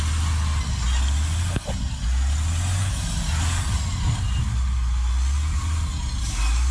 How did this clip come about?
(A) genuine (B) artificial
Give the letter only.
A